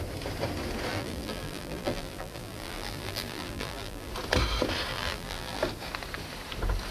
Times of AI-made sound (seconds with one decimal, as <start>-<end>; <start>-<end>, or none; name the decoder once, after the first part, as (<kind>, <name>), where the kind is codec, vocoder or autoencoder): 0.9-4.1 (vocoder, BigVGAN v2); 4.9-5.6